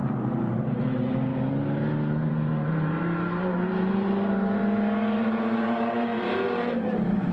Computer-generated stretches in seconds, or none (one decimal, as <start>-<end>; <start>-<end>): 0.0-1.3; 2.3-4.6; 5.2-7.3